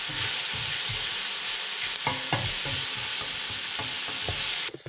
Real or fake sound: real